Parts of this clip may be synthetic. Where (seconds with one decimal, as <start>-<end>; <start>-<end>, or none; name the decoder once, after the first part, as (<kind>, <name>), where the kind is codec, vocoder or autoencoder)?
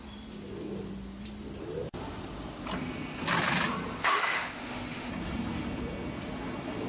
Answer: 4.0-5.1 (autoencoder, DAC-VAE)